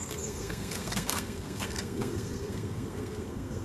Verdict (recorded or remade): remade